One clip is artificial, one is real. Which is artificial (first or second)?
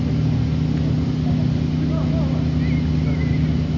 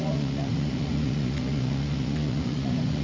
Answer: second